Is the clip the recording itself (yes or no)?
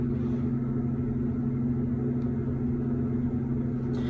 yes